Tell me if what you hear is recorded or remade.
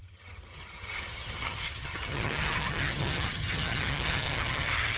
remade